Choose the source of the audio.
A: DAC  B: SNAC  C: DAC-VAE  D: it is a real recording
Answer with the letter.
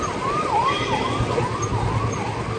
D